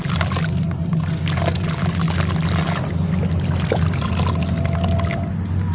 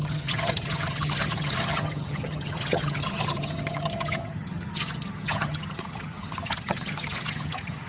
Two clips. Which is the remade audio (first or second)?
second